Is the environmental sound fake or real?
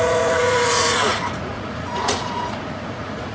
fake